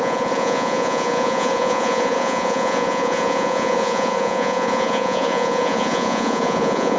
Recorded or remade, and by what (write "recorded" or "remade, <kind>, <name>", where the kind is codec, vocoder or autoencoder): remade, vocoder, Vocos